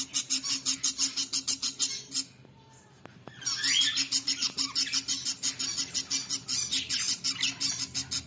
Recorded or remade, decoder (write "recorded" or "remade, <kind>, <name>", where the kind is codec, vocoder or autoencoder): recorded